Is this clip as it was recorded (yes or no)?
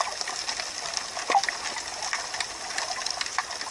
yes